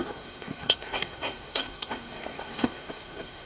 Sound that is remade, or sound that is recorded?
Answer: remade